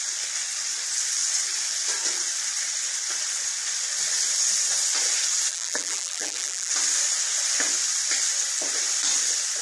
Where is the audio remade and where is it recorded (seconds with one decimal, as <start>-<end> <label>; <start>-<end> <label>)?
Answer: 0.0-5.5 recorded; 5.5-6.7 remade; 6.7-9.6 recorded